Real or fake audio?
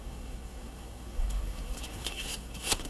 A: fake